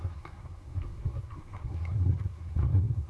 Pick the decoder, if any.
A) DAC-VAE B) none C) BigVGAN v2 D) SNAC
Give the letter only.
D